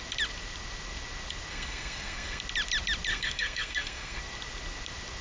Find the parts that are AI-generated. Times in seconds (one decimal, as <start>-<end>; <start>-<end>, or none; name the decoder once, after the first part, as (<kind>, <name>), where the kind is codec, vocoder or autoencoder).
1.5-2.4 (codec, SNAC); 3.1-4.2